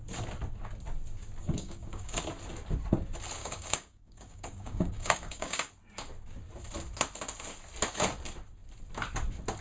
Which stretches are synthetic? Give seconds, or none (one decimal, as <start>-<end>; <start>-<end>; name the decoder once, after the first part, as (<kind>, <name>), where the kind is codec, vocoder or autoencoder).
1.4-2.2 (codec, DAC); 3.4-5.7